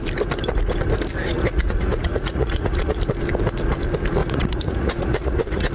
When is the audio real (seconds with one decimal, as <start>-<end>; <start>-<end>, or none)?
0.0-1.2; 3.0-4.2